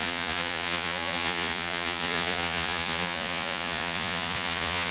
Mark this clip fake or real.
fake